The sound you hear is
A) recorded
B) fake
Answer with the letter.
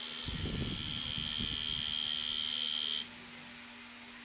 A